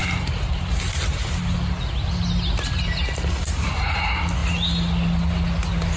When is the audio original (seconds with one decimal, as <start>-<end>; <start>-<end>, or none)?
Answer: 0.0-6.0